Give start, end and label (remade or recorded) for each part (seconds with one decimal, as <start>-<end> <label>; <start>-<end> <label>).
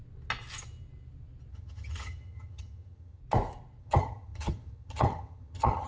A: 0.0-1.5 recorded; 1.5-3.2 remade; 3.2-3.8 recorded; 3.8-5.9 remade